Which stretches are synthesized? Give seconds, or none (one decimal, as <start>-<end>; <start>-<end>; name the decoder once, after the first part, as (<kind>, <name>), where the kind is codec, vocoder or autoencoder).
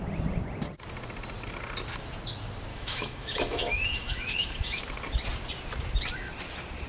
2.7-4.8 (autoencoder, DAC-VAE)